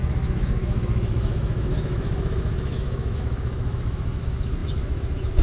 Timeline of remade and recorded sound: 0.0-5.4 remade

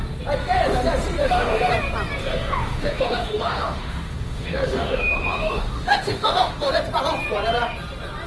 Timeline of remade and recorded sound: 0.0-1.2 recorded; 1.2-1.7 remade; 1.7-2.2 recorded; 2.2-6.7 remade; 6.7-8.3 recorded

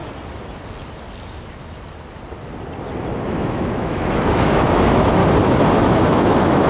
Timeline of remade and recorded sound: 0.0-3.3 recorded; 3.3-5.2 remade; 5.2-6.1 recorded; 6.1-6.7 remade

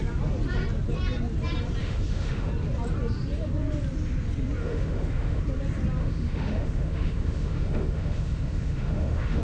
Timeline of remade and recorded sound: 0.0-1.8 recorded; 1.8-2.5 remade; 2.5-4.6 recorded; 4.6-5.4 remade; 5.4-6.0 recorded; 6.0-9.4 remade

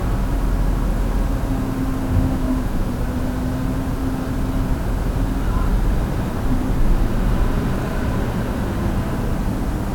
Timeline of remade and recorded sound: 0.0-2.0 recorded; 2.0-2.9 remade; 2.9-9.9 recorded

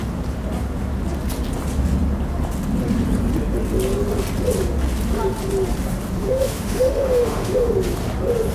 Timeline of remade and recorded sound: 0.0-6.2 recorded; 6.2-7.7 remade; 7.7-8.5 recorded